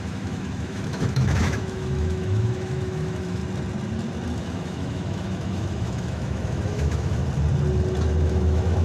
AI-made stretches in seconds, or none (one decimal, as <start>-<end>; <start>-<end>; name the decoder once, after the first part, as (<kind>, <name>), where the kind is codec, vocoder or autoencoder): 0.0-3.4 (autoencoder, DAC-VAE); 4.4-7.2; 8.2-8.8